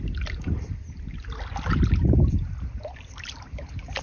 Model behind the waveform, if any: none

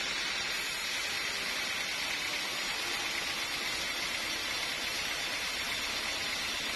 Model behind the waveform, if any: none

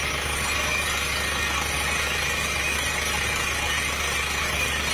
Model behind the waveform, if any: none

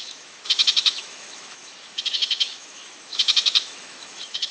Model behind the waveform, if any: autoencoder, DAC-VAE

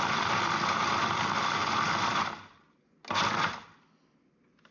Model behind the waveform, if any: none